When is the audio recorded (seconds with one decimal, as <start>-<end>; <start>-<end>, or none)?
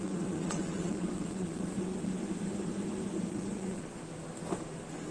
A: 2.2-3.3; 3.9-5.1